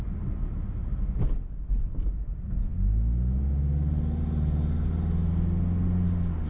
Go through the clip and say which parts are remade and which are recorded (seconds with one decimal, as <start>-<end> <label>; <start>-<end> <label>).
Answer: 0.0-6.5 recorded